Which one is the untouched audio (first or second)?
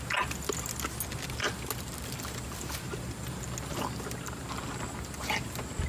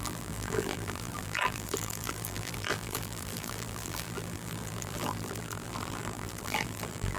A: first